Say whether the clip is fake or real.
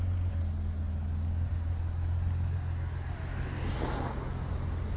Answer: real